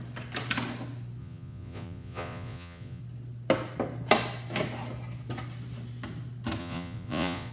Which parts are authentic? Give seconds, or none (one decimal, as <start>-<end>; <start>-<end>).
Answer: 0.0-1.2; 3.0-6.6